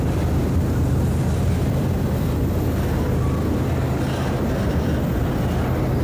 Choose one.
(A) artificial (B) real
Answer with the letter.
B